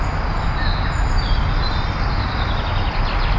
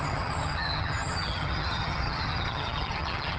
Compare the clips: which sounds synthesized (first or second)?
second